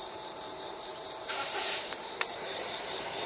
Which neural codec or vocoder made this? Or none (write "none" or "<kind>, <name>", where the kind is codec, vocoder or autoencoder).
vocoder, BigVGAN v2